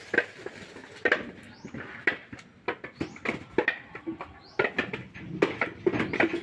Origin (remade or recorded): recorded